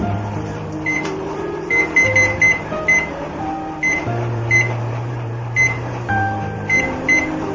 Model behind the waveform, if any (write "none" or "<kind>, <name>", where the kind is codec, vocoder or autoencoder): vocoder, BigVGAN v2